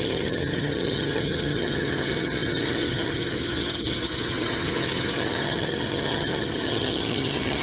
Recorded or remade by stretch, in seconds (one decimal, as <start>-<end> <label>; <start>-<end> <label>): 0.0-7.6 remade

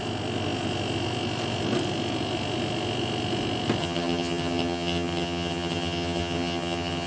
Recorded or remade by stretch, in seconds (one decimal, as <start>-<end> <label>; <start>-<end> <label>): 0.0-3.8 recorded; 3.8-7.1 remade